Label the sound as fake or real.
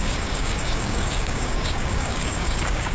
fake